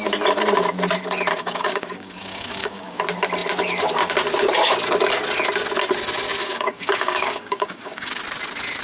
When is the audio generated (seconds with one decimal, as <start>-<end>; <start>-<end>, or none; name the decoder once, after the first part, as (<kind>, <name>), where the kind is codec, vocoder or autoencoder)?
1.3-3.0 (codec, DAC); 6.4-8.2